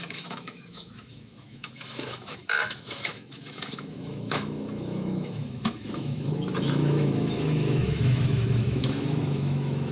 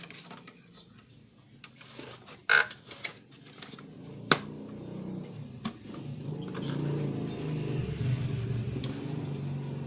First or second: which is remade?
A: first